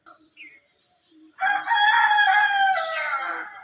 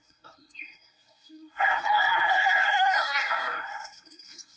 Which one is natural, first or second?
first